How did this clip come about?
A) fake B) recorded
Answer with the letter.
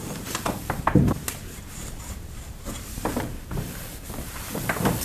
A